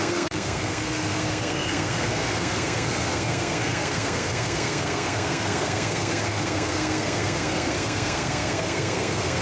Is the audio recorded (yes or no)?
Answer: no